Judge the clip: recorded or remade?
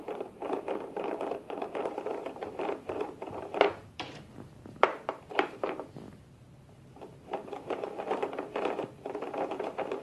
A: remade